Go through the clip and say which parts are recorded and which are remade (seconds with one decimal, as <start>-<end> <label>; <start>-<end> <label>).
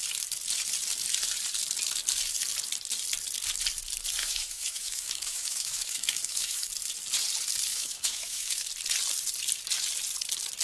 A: 0.0-4.2 recorded; 4.2-6.6 remade; 6.6-7.7 recorded; 7.7-8.7 remade; 8.7-10.6 recorded